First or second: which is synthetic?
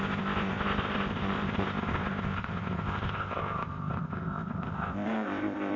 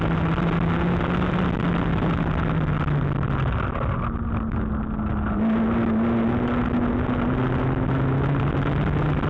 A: first